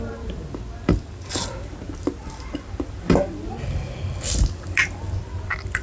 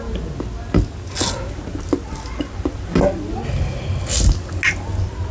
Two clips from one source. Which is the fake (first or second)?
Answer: first